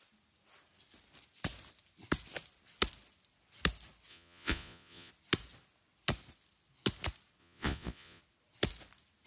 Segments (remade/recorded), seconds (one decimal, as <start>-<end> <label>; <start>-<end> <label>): 0.0-4.1 recorded; 4.1-5.1 remade; 5.1-7.4 recorded; 7.4-8.2 remade; 8.2-9.3 recorded